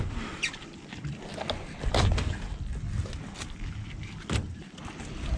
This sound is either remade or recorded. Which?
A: recorded